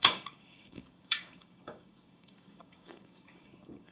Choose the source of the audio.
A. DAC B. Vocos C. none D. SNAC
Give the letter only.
A